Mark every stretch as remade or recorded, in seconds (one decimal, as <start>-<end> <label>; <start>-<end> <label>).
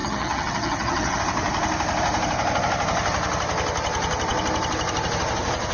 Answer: 0.0-1.2 remade; 1.2-5.7 recorded